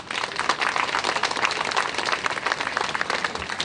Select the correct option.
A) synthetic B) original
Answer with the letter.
B